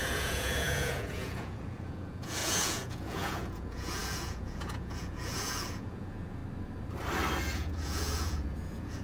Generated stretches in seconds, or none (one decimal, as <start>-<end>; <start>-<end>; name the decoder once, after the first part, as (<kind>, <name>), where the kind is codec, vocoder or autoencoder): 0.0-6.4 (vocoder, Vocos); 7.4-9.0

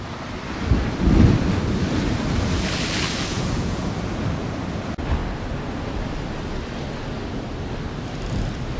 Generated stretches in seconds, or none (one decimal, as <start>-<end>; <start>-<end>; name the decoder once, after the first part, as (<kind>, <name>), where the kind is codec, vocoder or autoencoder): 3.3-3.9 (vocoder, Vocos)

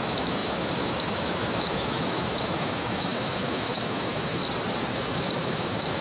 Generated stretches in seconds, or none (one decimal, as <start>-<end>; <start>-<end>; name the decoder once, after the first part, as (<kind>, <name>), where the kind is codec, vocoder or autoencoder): 0.0-4.4 (autoencoder, DAC-VAE); 4.9-6.0

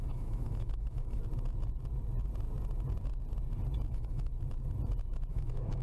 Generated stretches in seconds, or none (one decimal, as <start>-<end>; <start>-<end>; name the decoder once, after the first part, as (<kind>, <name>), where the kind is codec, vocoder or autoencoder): 0.0-1.2 (autoencoder, DAC-VAE); 3.9-4.3; 5.3-5.8